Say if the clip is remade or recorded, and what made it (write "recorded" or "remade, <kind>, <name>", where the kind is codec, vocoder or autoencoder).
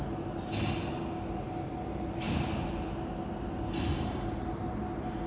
recorded